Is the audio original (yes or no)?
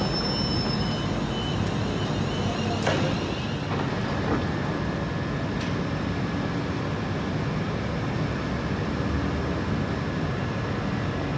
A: yes